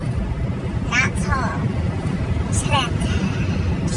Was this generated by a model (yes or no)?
no